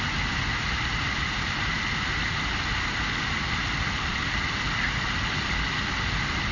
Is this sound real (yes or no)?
yes